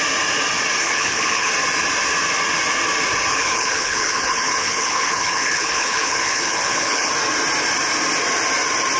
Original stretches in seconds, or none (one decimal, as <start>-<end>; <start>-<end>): 0.0-0.8; 1.5-3.3; 7.1-9.0